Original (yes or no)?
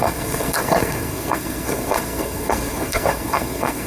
no